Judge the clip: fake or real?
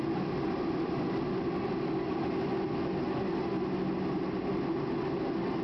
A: real